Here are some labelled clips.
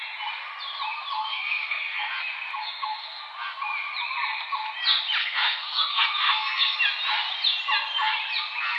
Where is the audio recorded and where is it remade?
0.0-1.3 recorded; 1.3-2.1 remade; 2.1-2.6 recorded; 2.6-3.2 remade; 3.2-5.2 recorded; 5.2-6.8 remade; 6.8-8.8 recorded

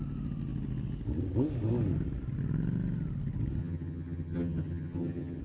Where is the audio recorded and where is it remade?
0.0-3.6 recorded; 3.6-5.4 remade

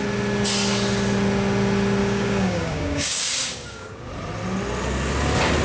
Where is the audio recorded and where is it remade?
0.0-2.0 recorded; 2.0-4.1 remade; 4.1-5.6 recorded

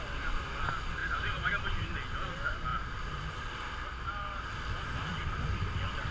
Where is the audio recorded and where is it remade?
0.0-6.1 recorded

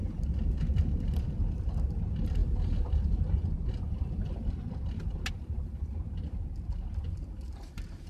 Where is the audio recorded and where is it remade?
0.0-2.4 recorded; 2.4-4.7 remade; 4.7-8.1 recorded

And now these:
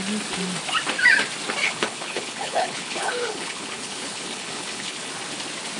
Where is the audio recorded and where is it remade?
0.0-1.6 recorded; 1.6-5.1 remade; 5.1-5.8 recorded